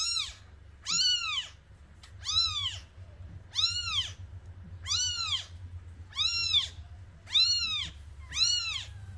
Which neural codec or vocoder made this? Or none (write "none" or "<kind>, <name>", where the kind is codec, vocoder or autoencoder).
none